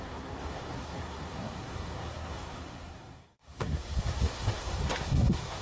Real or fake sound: fake